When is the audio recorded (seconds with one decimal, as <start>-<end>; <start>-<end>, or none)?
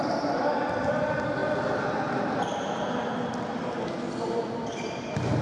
1.4-4.2